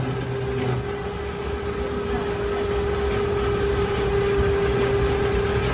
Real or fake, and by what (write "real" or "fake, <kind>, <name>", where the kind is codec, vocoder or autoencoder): real